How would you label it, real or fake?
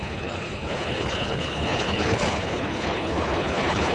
fake